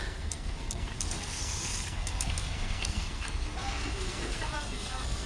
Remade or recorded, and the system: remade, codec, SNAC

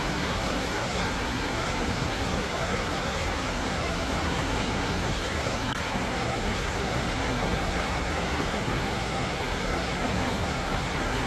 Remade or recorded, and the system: remade, codec, SNAC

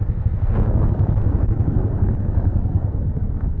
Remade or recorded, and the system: remade, codec, SNAC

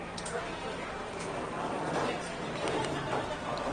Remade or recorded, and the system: recorded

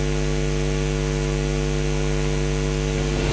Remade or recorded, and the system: recorded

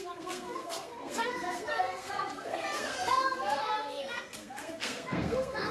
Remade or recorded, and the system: remade, codec, SNAC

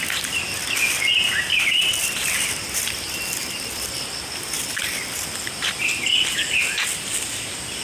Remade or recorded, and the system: recorded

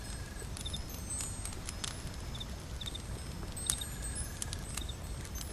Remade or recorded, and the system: recorded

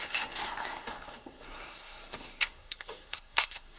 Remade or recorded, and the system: remade, codec, SNAC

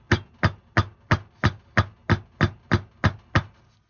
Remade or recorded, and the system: recorded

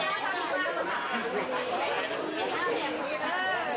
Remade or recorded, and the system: recorded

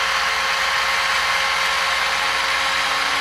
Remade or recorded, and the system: recorded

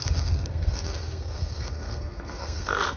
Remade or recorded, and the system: remade, codec, SNAC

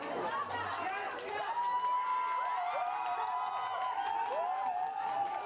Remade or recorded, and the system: recorded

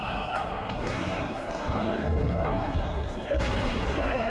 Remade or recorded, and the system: remade, codec, SNAC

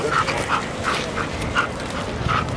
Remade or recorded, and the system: recorded